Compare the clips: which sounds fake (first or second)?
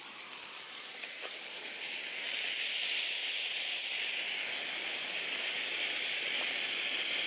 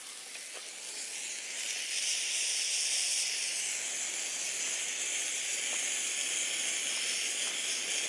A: first